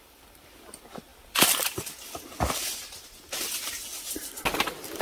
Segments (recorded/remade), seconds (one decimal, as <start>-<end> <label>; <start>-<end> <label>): 0.0-5.0 recorded

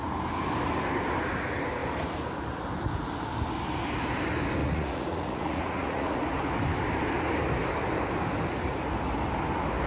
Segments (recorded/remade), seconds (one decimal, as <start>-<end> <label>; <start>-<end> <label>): 0.0-4.6 recorded; 4.6-6.2 remade; 6.2-9.9 recorded

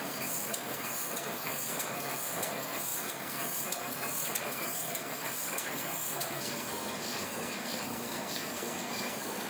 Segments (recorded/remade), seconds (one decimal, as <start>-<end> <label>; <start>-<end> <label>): 0.0-9.5 remade